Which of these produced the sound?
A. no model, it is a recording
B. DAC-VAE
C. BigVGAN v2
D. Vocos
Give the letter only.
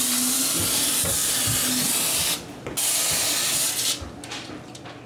A